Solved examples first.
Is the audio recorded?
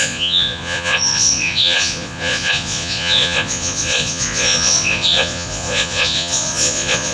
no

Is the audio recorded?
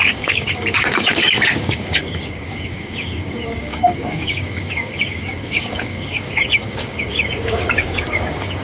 no